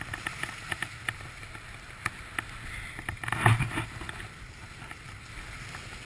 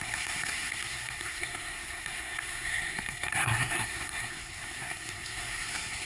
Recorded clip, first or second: first